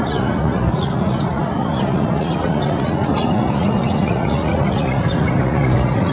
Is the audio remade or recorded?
remade